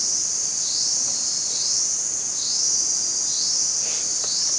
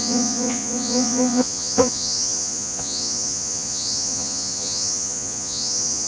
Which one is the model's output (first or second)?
second